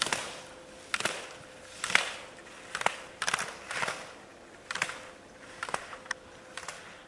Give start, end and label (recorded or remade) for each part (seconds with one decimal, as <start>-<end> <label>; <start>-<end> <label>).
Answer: 0.0-7.1 recorded